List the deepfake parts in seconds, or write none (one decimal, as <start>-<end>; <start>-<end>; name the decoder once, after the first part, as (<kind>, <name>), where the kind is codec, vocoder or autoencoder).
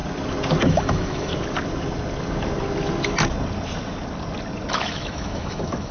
0.6-1.3 (autoencoder, DAC-VAE); 4.7-5.9